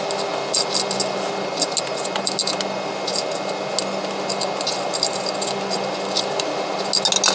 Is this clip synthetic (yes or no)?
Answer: no